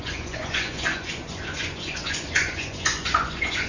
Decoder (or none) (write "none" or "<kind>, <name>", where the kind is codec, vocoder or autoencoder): vocoder, Vocos